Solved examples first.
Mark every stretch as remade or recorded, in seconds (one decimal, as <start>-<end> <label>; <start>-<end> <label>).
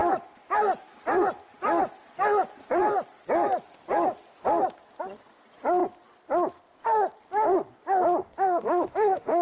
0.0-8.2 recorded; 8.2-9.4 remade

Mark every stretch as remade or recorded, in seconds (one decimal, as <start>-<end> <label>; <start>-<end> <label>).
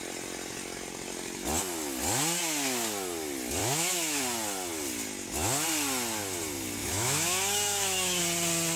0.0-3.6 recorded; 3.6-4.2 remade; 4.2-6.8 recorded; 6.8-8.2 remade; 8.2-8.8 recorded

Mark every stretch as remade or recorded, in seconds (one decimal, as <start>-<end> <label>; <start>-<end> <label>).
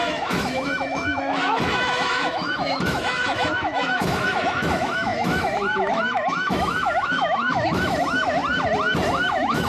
0.0-8.4 remade; 8.4-9.1 recorded; 9.1-9.7 remade